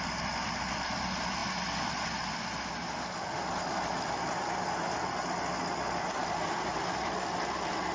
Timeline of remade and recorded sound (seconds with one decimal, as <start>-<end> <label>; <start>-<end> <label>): 0.0-7.9 recorded

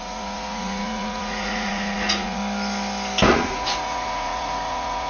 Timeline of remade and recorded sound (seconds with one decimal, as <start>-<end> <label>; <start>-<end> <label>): 0.0-2.4 remade; 2.4-3.3 recorded; 3.3-5.1 remade

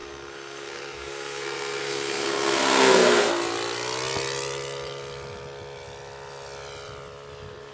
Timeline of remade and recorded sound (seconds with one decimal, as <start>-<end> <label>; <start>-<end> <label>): 0.0-3.3 remade; 3.3-7.7 recorded

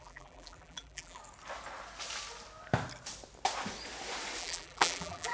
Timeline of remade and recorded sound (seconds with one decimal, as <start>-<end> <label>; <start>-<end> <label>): 0.0-1.2 remade; 1.2-4.4 recorded; 4.4-5.3 remade

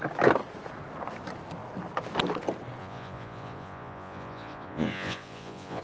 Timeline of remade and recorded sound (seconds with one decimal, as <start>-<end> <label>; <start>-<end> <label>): 0.0-2.8 recorded; 2.8-5.8 remade

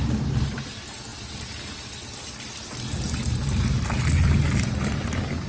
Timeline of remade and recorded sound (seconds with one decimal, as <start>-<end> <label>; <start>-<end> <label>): 0.0-5.5 recorded

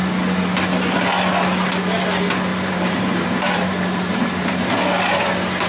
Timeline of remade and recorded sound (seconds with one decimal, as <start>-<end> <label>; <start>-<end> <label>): 0.0-2.5 recorded; 2.5-4.5 remade; 4.5-5.7 recorded